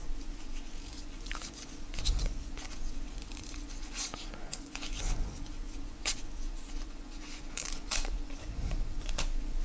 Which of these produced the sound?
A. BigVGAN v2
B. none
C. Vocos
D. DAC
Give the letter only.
C